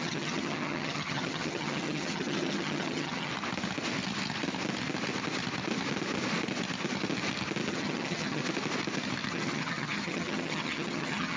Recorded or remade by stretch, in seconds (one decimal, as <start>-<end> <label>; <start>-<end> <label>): 0.0-3.3 remade; 3.3-7.7 recorded; 7.7-8.4 remade; 8.4-9.3 recorded; 9.3-11.4 remade